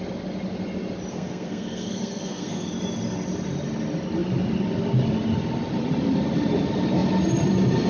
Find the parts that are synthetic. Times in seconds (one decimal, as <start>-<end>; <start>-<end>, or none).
1.1-2.7